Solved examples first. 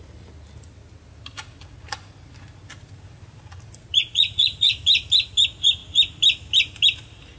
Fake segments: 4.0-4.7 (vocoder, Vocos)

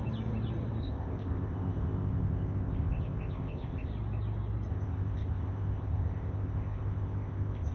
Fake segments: 0.8-3.9 (codec, ZipCodec); 4.7-7.7

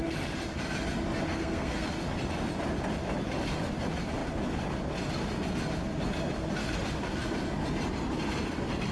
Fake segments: 1.3-1.9 (codec, SNAC)